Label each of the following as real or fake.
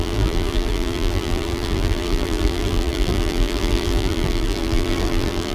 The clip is fake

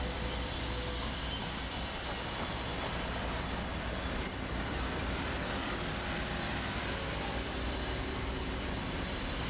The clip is fake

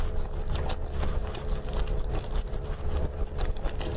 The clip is real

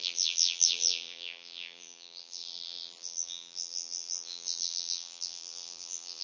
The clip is fake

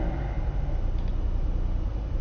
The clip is real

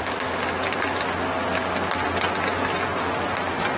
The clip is real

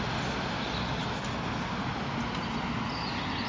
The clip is real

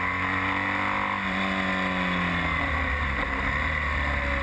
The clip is real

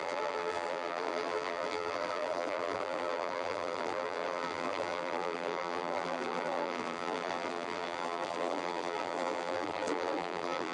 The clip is fake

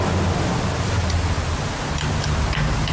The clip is real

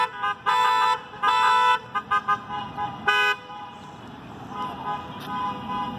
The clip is real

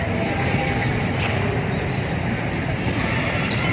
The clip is fake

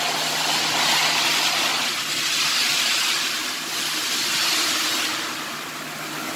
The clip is real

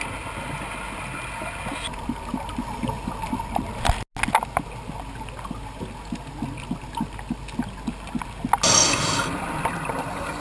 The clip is real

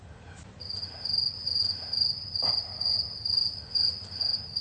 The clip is real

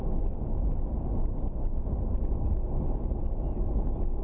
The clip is real